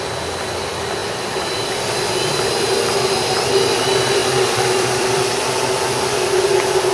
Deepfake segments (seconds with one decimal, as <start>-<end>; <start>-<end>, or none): 1.0-1.8; 4.2-5.7